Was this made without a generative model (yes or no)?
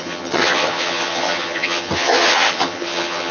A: no